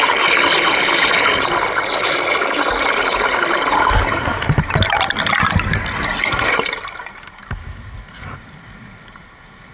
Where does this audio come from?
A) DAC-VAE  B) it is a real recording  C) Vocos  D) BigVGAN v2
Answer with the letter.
B